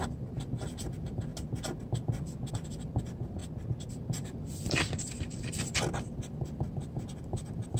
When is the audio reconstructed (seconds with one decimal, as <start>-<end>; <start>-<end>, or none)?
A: 0.0-1.3; 2.5-3.4; 3.9-7.8